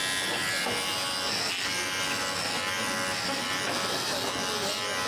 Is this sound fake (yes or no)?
no